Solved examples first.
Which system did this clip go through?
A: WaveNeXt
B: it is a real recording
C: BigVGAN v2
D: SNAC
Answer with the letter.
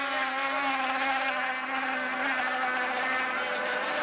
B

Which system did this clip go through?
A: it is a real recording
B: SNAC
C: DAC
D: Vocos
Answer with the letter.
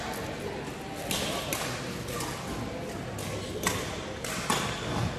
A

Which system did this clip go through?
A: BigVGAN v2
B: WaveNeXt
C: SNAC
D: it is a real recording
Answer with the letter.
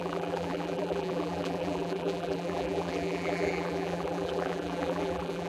A